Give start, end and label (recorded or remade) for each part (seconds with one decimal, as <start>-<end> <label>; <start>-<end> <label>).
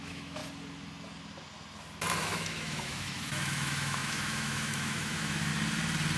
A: 0.0-0.4 remade; 0.4-2.2 recorded; 2.2-5.5 remade; 5.5-6.2 recorded